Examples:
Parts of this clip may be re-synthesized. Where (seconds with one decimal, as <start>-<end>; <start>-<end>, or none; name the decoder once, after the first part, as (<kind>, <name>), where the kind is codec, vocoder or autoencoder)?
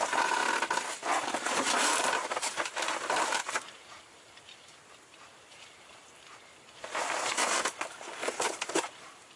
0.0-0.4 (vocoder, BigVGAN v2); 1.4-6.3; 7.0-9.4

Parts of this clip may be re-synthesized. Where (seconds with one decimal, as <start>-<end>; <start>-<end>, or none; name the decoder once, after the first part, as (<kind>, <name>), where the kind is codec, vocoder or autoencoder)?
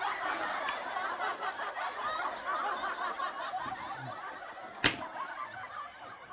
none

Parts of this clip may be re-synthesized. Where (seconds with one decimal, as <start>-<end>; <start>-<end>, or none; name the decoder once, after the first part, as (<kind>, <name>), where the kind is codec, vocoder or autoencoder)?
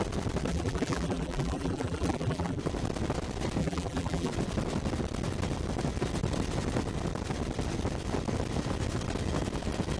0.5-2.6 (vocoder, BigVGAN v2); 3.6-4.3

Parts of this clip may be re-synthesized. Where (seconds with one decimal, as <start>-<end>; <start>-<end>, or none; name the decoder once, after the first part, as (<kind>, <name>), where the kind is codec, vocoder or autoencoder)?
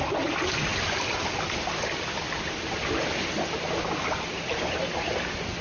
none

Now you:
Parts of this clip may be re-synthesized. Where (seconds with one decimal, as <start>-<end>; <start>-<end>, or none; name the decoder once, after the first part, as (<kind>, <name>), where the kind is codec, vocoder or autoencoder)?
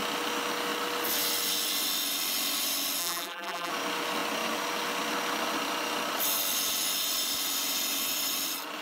3.0-3.7 (vocoder, BigVGAN v2)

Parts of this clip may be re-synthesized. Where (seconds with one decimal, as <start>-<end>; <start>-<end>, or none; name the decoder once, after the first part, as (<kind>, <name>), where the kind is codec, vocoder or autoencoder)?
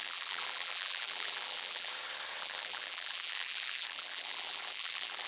0.0-1.9 (vocoder, BigVGAN v2); 2.4-5.3